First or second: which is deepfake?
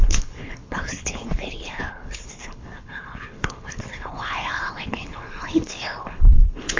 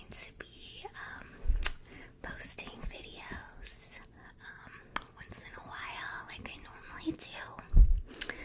first